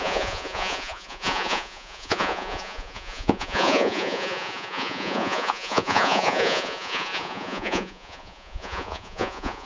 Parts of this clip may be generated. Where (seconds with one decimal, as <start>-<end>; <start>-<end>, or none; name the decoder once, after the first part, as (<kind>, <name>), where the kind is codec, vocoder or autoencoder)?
0.0-9.7 (vocoder, Vocos)

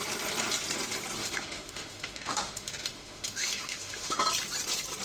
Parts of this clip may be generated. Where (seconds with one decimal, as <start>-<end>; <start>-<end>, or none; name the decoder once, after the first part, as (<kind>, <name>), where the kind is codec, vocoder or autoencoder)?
1.2-4.2 (autoencoder, DAC-VAE)

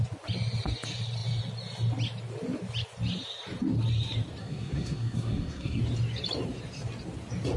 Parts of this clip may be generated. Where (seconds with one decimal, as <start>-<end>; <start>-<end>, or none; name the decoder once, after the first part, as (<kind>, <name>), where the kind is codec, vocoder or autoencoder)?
4.4-5.8 (codec, SNAC)

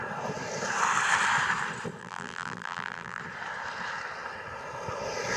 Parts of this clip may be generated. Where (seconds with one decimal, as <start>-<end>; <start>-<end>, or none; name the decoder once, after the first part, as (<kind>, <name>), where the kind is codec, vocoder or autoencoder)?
2.0-3.2 (vocoder, BigVGAN v2)

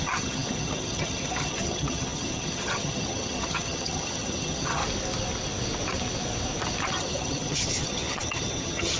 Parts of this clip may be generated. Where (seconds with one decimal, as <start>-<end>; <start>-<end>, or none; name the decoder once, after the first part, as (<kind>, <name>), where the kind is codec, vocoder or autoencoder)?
0.0-4.8 (vocoder, HiFi-GAN); 6.9-9.0

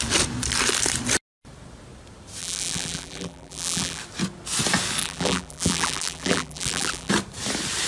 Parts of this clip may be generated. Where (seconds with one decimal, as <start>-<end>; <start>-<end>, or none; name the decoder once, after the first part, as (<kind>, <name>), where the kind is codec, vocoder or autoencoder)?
2.4-4.0 (vocoder, BigVGAN v2); 5.0-7.1